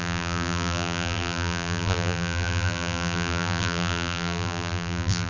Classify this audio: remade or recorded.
remade